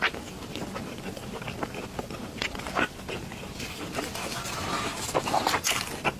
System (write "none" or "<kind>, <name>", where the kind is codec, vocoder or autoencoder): none